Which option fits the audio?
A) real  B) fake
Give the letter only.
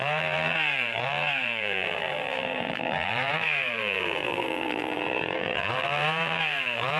B